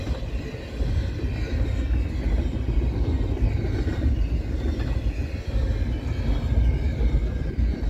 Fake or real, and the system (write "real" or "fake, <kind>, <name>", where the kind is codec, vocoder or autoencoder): real